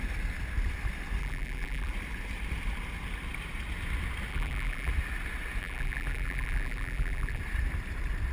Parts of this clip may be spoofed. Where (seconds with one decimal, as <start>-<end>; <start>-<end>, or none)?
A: 1.2-1.9; 4.3-4.9; 5.6-7.4